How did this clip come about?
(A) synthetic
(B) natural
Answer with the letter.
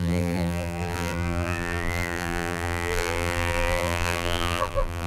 A